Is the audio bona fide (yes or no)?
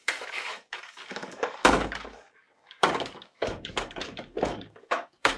no